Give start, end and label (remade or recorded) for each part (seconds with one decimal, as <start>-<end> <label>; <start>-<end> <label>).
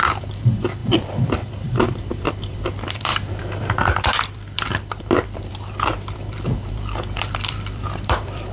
0.0-8.5 remade